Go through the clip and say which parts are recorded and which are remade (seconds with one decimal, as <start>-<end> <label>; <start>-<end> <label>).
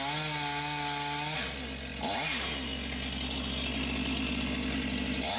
0.0-5.4 recorded